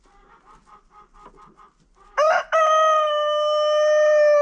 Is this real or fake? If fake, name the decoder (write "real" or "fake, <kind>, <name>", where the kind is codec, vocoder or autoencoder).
real